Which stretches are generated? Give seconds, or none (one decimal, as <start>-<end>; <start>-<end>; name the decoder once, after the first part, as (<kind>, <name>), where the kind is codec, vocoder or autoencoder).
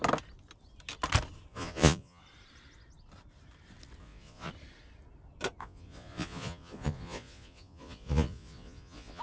1.5-2.2 (vocoder, Vocos); 4.0-4.5; 5.6-9.2